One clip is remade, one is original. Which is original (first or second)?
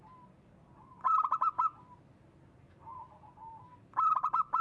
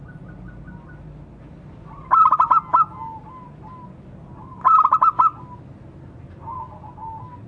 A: second